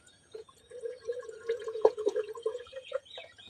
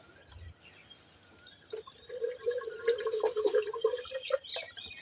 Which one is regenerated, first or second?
first